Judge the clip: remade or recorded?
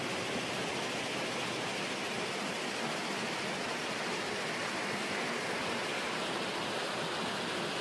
recorded